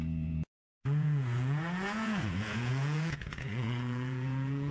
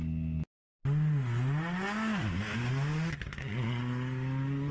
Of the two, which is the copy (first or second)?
first